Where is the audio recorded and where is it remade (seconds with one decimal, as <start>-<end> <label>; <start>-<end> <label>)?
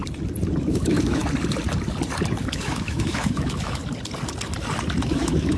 0.0-0.6 recorded; 0.6-1.2 remade; 1.2-2.4 recorded; 2.4-3.8 remade; 3.8-5.0 recorded; 5.0-5.6 remade